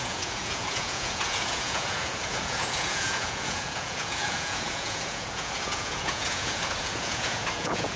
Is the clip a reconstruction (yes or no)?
yes